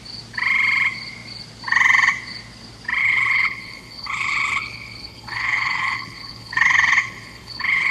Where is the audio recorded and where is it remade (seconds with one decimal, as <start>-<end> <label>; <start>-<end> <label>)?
0.0-3.0 recorded; 3.0-7.9 remade